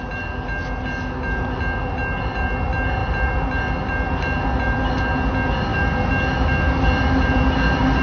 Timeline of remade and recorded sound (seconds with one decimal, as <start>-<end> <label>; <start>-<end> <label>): 0.0-8.0 recorded